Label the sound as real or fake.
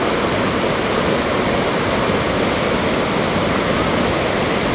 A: real